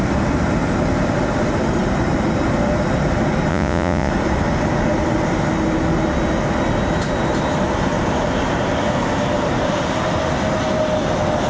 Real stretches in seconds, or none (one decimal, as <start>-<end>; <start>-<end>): 0.0-3.5; 4.1-11.5